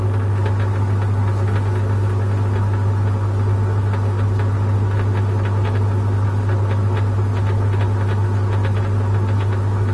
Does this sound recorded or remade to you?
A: recorded